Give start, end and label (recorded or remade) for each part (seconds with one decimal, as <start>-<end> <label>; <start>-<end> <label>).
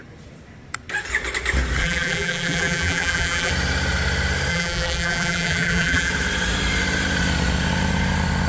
0.0-1.8 recorded; 1.8-3.5 remade; 3.5-4.5 recorded; 4.5-6.1 remade; 6.1-8.5 recorded